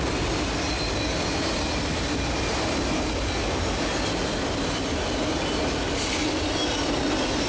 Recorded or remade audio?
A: recorded